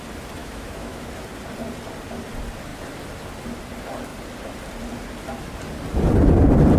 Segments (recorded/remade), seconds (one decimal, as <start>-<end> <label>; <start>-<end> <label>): 0.0-0.4 recorded; 0.4-1.1 remade; 1.1-6.8 recorded